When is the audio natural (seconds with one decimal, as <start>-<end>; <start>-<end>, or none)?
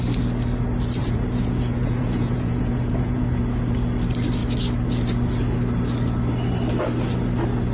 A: 0.0-1.0; 3.4-7.7